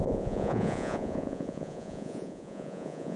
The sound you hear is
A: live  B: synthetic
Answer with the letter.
B